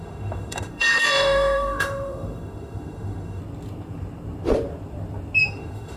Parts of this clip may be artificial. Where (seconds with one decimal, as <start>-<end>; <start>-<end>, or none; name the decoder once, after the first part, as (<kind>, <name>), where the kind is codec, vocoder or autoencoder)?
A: 0.0-3.4 (autoencoder, DAC-VAE); 5.4-6.0